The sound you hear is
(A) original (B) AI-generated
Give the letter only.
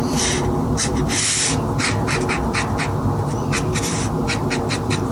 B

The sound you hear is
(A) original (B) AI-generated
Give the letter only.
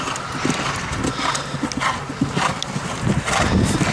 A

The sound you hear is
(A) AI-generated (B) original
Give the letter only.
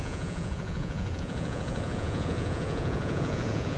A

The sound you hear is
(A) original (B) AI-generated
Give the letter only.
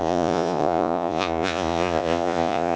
B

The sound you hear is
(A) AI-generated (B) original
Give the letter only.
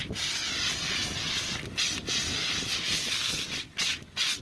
B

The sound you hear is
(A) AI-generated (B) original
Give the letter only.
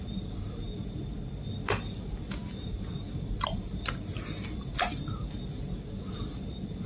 B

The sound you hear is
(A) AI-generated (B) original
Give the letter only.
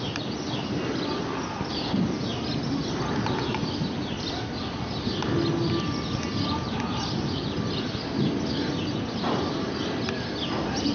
B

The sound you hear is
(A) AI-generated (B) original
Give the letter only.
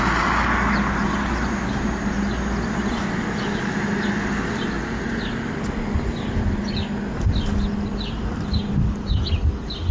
B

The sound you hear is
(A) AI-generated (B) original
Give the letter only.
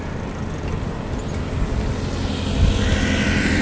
B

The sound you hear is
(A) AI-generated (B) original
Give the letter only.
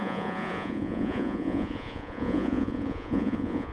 A